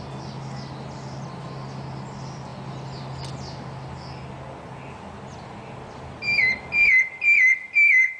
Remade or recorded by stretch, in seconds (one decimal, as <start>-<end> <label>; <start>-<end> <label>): 0.0-8.2 recorded